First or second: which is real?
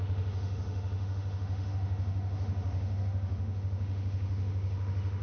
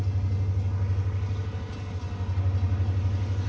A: second